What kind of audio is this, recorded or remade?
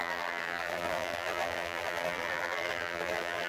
remade